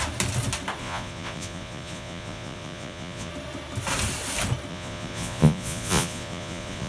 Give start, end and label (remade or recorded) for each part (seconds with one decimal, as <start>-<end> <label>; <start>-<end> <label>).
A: 0.0-0.8 recorded; 0.8-3.3 remade; 3.3-4.7 recorded; 4.7-6.9 remade